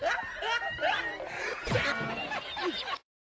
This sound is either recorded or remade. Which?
recorded